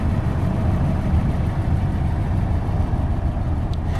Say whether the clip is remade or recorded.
recorded